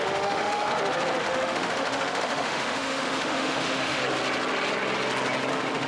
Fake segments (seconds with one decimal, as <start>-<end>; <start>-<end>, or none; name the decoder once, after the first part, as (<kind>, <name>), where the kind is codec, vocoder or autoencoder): 0.0-0.7 (autoencoder, DAC-VAE); 1.2-4.0; 5.5-5.9